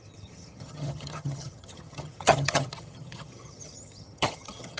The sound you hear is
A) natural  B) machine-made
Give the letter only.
B